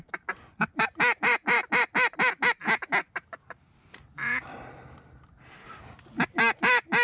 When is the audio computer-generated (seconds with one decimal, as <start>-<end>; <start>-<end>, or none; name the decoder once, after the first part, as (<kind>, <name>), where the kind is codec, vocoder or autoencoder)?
none